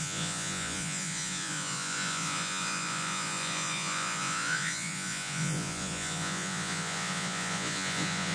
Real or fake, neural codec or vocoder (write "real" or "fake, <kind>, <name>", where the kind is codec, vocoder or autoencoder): fake, vocoder, Vocos